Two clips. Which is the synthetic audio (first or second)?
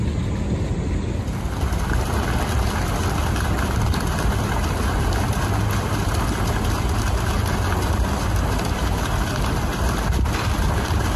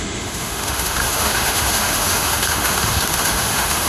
second